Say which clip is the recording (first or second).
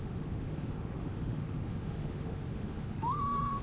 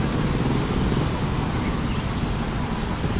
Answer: second